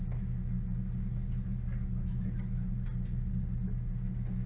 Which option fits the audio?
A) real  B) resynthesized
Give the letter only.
A